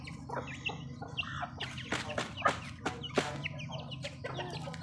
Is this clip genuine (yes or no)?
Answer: yes